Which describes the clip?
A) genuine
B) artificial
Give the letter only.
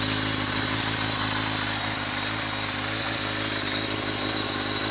A